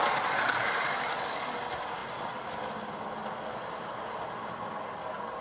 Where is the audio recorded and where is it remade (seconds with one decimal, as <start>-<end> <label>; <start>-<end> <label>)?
0.0-0.6 recorded; 0.6-1.1 remade; 1.1-5.4 recorded